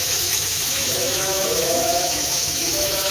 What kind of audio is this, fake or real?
fake